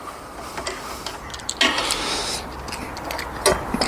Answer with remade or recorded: recorded